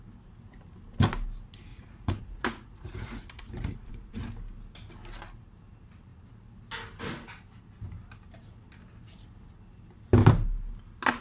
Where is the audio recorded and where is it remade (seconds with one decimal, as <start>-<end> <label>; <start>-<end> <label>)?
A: 0.0-1.7 recorded; 1.7-4.3 remade; 4.3-11.2 recorded

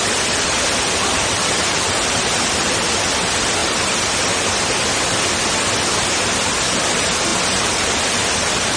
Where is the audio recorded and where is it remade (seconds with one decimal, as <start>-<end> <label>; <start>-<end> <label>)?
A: 0.0-7.3 recorded; 7.3-7.9 remade; 7.9-8.8 recorded

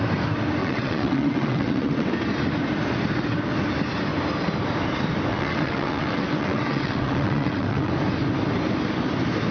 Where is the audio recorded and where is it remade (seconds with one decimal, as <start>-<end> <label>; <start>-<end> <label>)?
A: 0.0-0.6 recorded; 0.6-2.1 remade; 2.1-5.3 recorded; 5.3-7.9 remade; 7.9-9.5 recorded

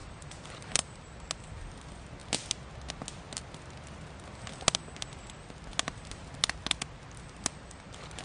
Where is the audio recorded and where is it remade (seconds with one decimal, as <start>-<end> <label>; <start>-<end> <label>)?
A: 0.0-8.2 recorded

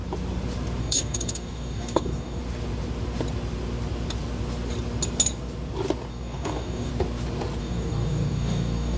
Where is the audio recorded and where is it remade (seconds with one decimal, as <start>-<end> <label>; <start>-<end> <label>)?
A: 0.0-0.8 recorded; 0.8-2.4 remade; 2.4-6.1 recorded; 6.1-6.9 remade; 6.9-7.6 recorded; 7.6-9.0 remade

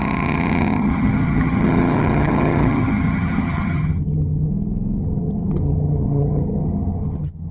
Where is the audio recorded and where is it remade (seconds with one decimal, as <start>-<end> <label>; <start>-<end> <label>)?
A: 0.0-4.5 remade; 4.5-5.0 recorded; 5.0-7.5 remade

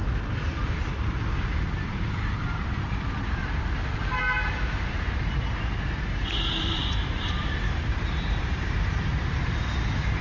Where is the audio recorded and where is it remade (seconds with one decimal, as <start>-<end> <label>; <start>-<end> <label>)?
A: 0.0-1.9 recorded; 1.9-3.4 remade; 3.4-4.9 recorded; 4.9-10.2 remade

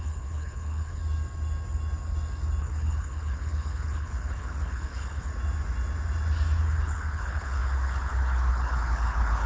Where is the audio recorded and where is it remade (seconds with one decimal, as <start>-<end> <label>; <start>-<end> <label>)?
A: 0.0-1.0 remade; 1.0-2.6 recorded; 2.6-5.3 remade; 5.3-6.6 recorded; 6.6-9.5 remade